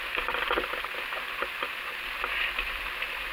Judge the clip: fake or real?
fake